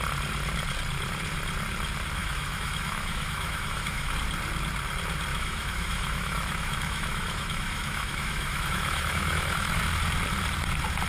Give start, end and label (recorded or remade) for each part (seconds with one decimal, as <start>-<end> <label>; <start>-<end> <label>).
0.0-2.2 recorded; 2.2-4.1 remade; 4.1-5.3 recorded; 5.3-9.8 remade; 9.8-11.1 recorded